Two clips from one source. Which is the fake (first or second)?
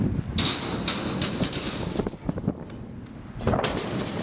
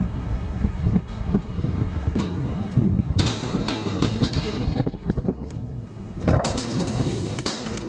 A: second